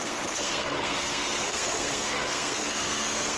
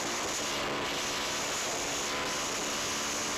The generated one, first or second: first